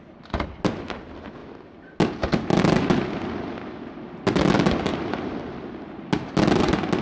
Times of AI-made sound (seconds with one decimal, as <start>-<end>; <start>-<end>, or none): none